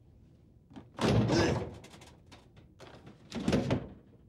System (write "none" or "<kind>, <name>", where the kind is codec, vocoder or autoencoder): none